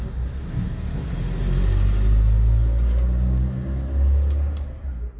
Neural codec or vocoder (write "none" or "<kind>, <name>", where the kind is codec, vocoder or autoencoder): none